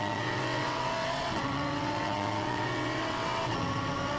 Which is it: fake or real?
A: fake